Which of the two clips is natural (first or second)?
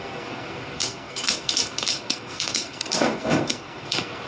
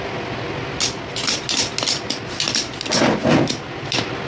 second